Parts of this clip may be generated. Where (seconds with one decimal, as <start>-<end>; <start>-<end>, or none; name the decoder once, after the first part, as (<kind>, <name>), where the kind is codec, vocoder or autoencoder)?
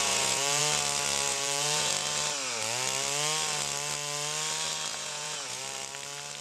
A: 0.0-0.6 (vocoder, Vocos); 1.3-1.9; 4.9-5.6